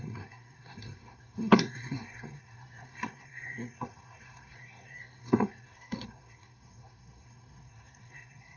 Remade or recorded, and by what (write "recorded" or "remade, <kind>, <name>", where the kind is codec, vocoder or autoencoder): remade, codec, SNAC